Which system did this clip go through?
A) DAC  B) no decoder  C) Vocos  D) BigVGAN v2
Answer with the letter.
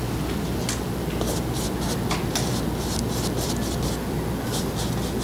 B